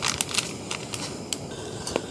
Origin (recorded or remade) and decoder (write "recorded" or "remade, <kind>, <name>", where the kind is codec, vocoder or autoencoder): recorded